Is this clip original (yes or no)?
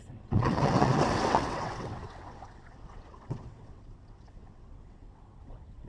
no